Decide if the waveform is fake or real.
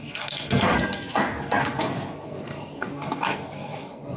fake